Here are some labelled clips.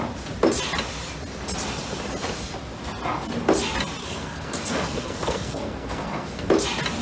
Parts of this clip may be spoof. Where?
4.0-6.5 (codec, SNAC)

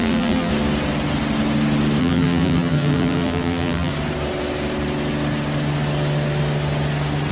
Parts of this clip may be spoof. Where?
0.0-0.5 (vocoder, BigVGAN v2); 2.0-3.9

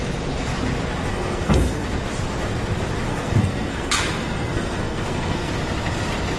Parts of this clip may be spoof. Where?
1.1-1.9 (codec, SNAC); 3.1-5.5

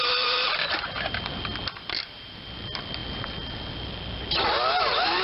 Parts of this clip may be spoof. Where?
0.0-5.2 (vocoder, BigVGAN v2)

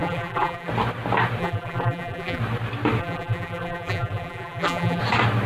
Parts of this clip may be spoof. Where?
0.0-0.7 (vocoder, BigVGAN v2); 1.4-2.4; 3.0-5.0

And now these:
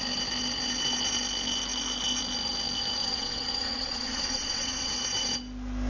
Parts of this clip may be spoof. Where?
3.0-4.9 (vocoder, WaveNeXt)

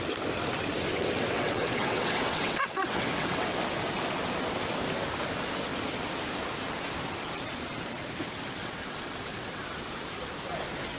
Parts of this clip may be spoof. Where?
0.9-3.6 (vocoder, WaveNeXt); 8.6-9.6